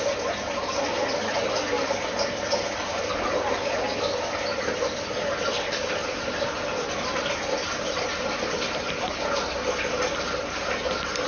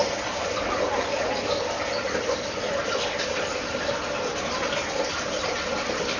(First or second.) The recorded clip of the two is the first